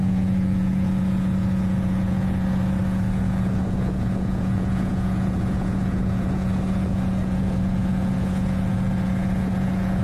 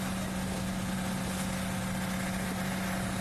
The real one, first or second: second